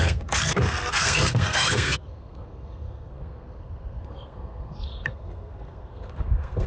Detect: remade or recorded remade